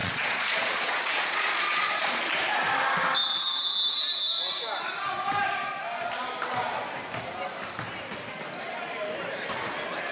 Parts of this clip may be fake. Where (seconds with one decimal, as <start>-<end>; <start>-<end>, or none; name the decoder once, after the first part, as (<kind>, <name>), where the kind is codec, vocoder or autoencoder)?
0.0-2.2 (vocoder, Vocos)